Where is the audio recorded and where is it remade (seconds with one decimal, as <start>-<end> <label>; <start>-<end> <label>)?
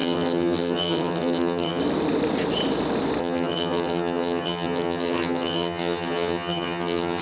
0.0-1.8 remade; 1.8-3.2 recorded; 3.2-7.2 remade